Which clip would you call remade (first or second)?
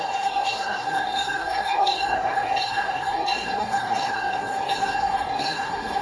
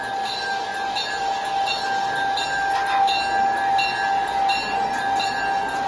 first